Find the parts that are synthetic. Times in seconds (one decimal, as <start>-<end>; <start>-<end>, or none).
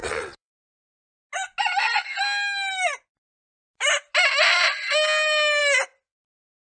0.0-0.5